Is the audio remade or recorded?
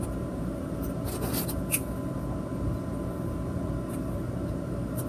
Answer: recorded